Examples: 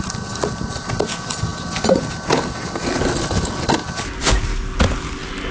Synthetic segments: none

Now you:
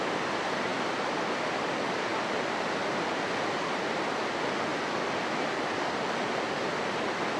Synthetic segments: none

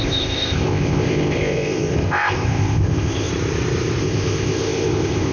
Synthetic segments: 0.0-3.3; 4.0-5.3

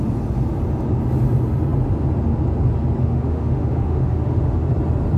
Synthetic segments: 3.0-4.7

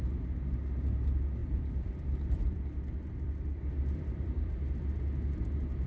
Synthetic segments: 1.4-4.9

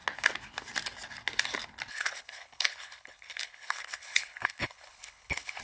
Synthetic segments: 1.9-5.6

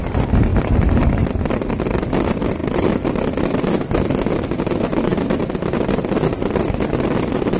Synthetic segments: none

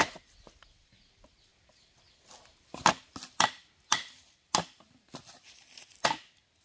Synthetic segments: none